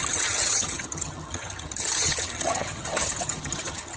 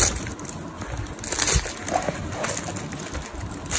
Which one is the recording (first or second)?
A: second